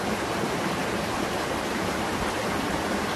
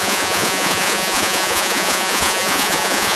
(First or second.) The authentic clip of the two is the first